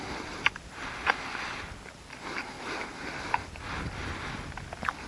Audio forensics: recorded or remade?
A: recorded